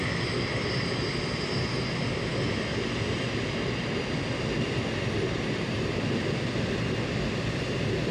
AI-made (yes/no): no